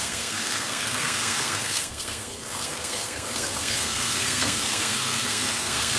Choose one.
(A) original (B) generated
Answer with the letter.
B